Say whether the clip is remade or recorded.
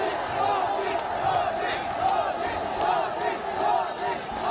recorded